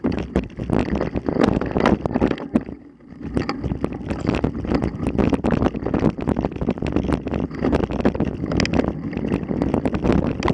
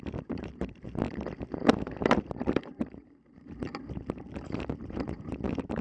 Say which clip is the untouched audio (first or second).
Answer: first